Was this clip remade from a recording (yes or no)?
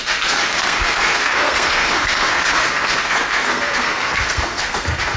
yes